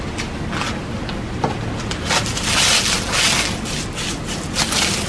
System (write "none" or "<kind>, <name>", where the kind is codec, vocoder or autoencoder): none